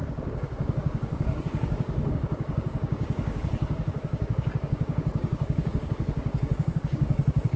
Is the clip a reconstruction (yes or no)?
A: yes